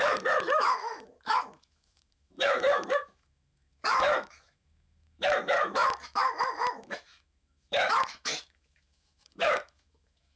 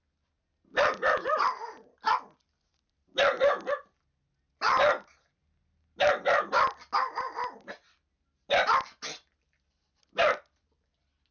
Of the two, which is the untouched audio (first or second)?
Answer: second